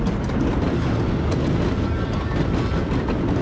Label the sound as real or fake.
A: real